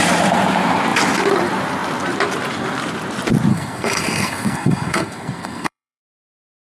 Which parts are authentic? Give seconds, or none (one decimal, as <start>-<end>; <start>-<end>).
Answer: 0.0-3.5; 6.0-6.8